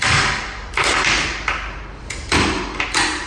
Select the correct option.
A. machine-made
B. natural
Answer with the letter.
A